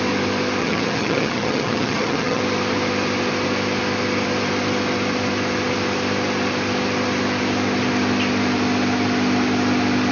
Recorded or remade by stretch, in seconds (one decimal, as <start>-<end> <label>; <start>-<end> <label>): 0.0-0.6 recorded; 0.6-2.4 remade; 2.4-10.1 recorded